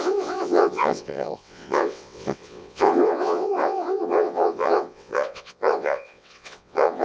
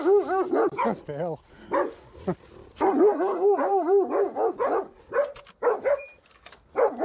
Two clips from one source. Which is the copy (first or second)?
first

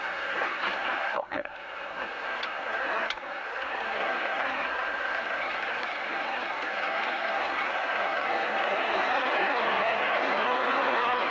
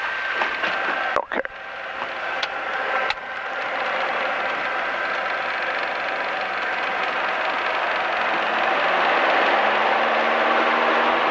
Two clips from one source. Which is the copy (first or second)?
first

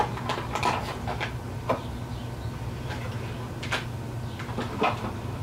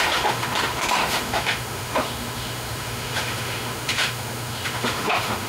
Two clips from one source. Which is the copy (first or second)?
second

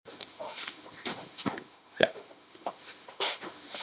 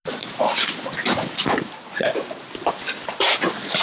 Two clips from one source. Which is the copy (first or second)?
first